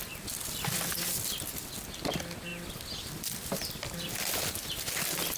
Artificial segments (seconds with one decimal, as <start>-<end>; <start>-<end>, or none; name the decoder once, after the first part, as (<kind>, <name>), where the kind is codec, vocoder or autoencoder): none